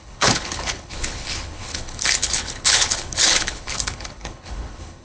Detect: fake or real fake